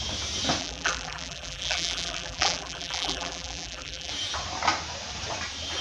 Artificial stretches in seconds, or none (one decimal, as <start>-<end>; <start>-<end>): 0.6-4.1